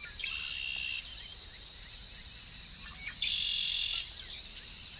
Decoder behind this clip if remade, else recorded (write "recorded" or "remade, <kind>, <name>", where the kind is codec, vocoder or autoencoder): recorded